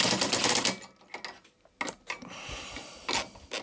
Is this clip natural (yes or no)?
yes